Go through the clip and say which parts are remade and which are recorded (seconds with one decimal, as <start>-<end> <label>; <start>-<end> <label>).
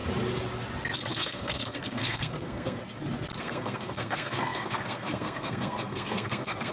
0.0-1.1 recorded; 1.1-2.8 remade; 2.8-3.4 recorded; 3.4-6.7 remade